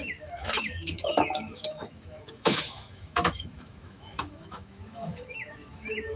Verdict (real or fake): fake